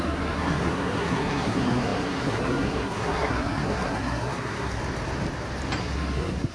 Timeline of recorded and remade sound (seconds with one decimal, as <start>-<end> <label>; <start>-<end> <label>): 0.0-4.8 remade; 4.8-5.8 recorded; 5.8-6.5 remade